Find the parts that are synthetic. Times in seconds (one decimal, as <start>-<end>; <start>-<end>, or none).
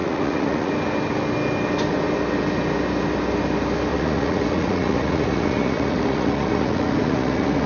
0.0-0.7; 3.9-7.7